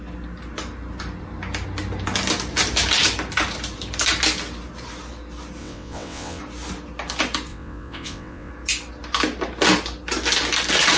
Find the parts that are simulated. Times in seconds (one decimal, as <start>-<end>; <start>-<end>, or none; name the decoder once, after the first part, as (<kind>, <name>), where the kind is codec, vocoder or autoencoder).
5.6-6.4 (vocoder, WaveNeXt); 7.5-8.5